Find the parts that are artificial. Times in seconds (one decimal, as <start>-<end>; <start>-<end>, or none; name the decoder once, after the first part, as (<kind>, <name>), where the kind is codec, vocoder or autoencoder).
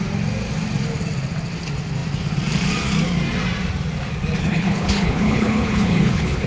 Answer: 4.4-6.5 (codec, HILCodec)